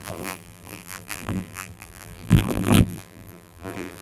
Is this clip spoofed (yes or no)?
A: yes